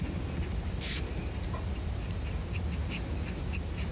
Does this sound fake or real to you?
real